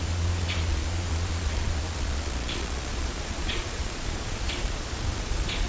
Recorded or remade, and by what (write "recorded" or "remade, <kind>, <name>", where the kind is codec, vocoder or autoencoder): remade, vocoder, Vocos